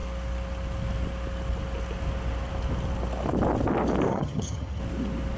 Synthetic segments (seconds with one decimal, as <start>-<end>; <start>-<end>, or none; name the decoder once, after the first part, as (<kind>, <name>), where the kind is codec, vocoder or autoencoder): 4.1-4.8 (vocoder, HiFi-GAN)